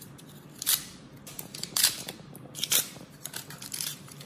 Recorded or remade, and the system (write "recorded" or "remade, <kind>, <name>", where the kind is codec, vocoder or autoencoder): remade, vocoder, BigVGAN v2